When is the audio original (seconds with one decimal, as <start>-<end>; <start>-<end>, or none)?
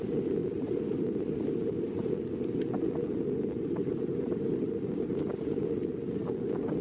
0.0-0.4; 2.1-4.1; 4.6-6.8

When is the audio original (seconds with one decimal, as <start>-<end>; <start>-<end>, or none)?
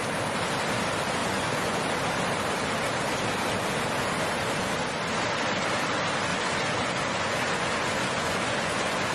0.0-1.2; 1.8-6.3